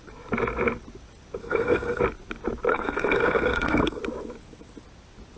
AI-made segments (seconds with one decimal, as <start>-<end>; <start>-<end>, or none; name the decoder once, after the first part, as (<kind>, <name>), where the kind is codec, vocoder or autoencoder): 1.4-2.0 (codec, SNAC); 2.7-4.0